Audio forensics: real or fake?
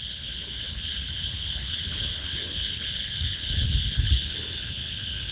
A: fake